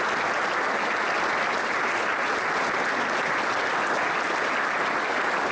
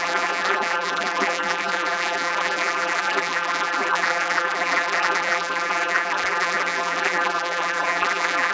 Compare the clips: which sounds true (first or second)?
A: first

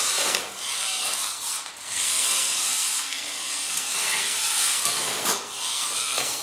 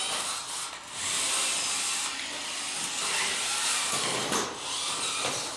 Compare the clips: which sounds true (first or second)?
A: second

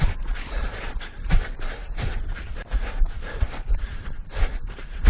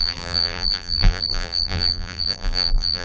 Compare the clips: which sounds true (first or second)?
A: first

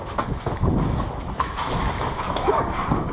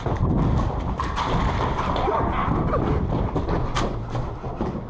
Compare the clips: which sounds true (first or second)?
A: second